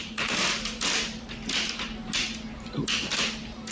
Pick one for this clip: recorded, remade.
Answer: recorded